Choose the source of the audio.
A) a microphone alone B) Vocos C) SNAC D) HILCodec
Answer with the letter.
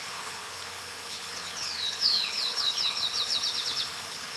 D